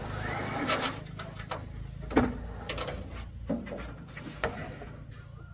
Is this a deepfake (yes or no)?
no